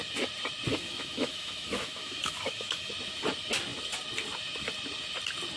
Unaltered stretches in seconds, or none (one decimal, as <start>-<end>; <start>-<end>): 0.0-0.7; 2.9-5.6